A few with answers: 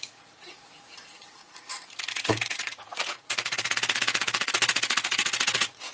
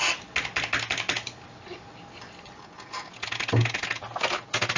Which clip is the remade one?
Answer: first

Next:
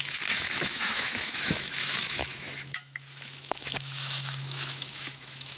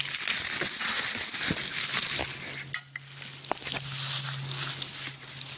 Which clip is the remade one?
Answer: first